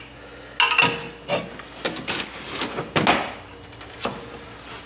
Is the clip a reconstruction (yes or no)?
no